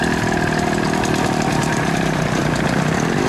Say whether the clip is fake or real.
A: real